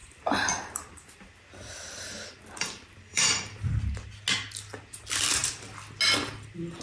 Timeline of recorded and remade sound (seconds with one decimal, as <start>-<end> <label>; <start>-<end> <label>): 0.0-3.8 remade; 3.8-6.8 recorded